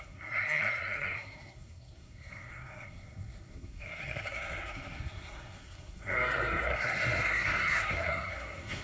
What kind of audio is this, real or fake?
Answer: fake